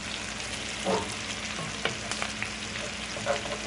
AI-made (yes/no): no